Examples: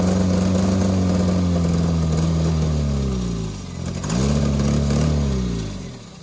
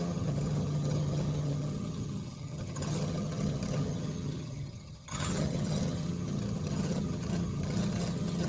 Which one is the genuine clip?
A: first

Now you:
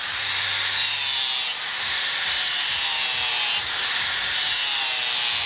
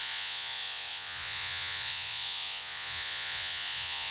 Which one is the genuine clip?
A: first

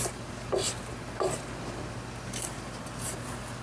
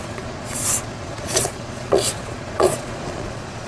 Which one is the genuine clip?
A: first